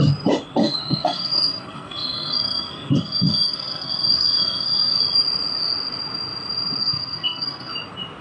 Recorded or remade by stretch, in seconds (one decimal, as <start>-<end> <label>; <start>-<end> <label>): 0.0-0.6 recorded; 0.6-5.0 remade; 5.0-6.8 recorded; 6.8-7.7 remade; 7.7-8.2 recorded